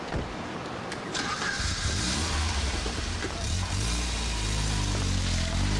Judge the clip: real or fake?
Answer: fake